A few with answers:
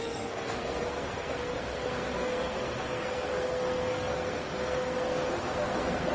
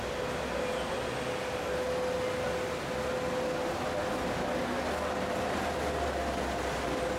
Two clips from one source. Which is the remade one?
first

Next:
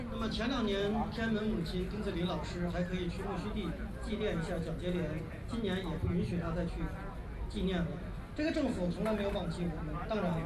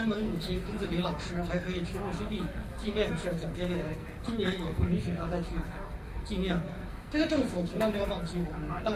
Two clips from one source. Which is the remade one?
second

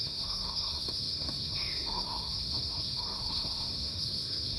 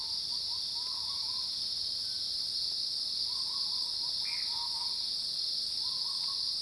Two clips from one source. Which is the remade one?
first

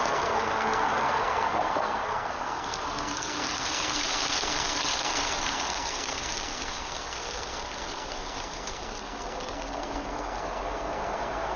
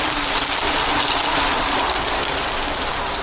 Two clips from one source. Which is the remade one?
first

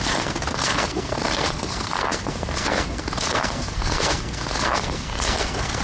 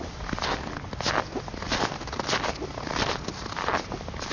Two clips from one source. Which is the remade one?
first